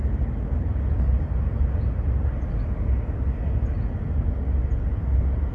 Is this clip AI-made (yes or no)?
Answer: no